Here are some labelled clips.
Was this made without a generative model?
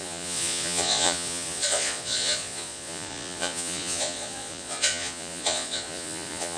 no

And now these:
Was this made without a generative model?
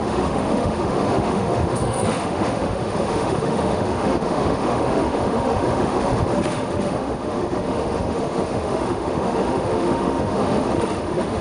no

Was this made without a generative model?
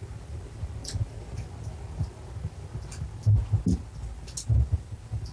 yes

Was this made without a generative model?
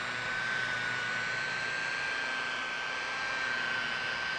yes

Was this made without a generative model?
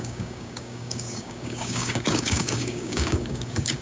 no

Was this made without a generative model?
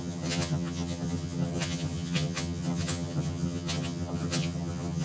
no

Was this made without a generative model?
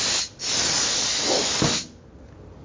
yes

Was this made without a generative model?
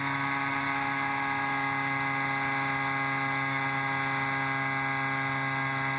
yes